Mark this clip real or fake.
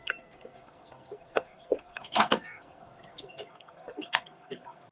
fake